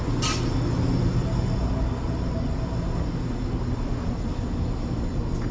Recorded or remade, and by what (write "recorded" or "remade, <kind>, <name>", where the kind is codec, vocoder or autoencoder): recorded